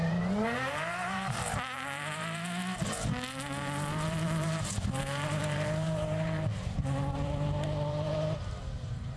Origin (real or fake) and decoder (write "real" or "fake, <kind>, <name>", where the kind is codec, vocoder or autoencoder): fake, vocoder, BigVGAN v2